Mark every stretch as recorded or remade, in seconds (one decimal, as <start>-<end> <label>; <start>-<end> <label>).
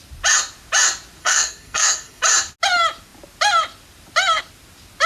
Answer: 0.0-1.2 recorded; 1.2-2.2 remade; 2.2-5.1 recorded